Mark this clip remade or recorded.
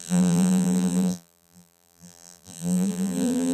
remade